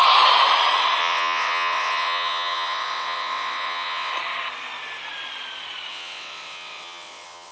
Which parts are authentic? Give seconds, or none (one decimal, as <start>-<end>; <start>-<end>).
0.0-1.0; 4.1-5.9